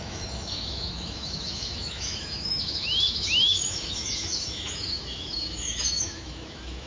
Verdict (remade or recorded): remade